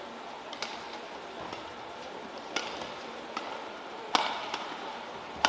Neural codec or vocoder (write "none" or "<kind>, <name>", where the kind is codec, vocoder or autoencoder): none